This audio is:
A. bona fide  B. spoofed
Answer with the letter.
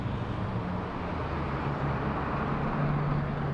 A